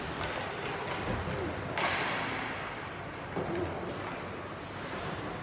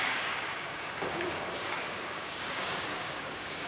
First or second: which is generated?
second